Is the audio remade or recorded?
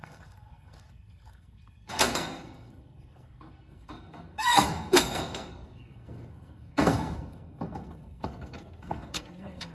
remade